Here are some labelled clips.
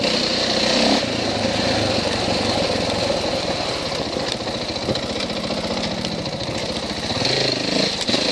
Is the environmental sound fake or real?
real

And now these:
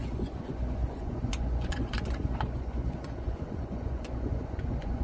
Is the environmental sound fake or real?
fake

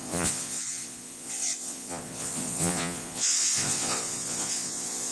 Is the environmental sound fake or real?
fake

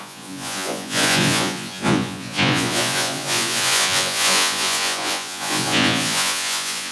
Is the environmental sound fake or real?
fake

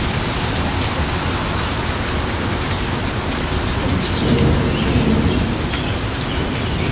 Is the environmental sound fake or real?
real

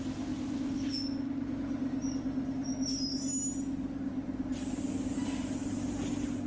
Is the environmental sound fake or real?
real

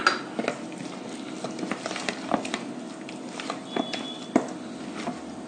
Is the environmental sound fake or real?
real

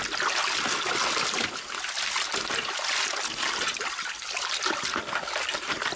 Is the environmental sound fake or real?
real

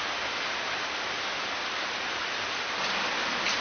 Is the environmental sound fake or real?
real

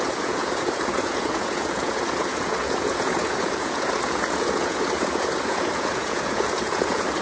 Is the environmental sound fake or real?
fake